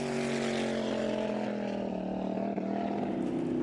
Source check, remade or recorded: recorded